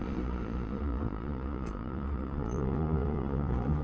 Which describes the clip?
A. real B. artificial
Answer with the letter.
B